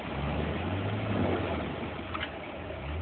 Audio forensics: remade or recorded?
recorded